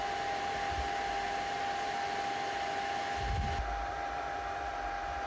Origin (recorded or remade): recorded